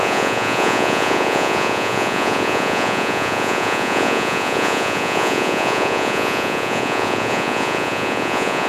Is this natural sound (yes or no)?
no